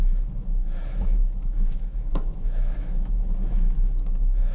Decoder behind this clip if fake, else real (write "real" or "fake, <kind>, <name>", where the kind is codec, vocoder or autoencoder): fake, autoencoder, DAC-VAE